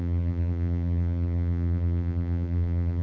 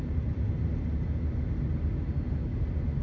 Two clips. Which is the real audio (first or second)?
second